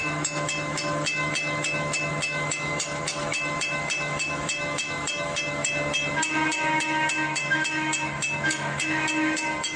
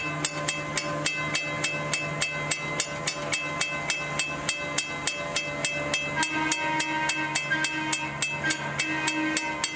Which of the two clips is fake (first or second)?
first